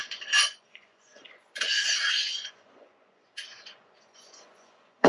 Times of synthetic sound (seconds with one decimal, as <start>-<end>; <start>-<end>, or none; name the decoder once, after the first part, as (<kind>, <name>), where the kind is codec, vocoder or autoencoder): 0.0-5.1 (vocoder, Vocos)